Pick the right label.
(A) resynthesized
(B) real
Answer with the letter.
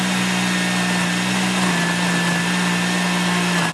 B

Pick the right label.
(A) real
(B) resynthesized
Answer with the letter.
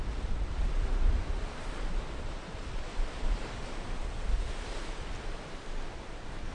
A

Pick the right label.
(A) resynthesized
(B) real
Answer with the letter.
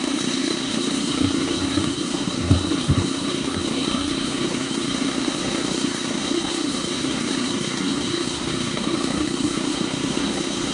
A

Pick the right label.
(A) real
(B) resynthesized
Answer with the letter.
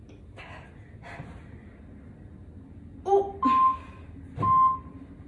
A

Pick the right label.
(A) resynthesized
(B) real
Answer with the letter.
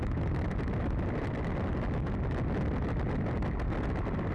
B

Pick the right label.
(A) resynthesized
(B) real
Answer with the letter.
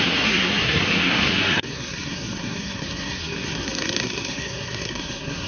A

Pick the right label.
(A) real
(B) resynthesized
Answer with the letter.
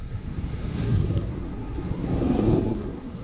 B